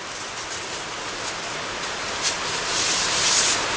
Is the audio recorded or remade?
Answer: recorded